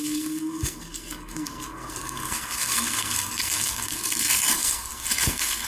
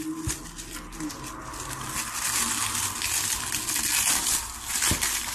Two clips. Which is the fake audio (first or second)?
first